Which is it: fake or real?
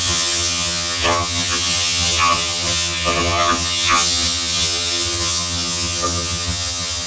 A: fake